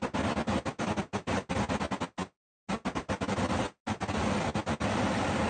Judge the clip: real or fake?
real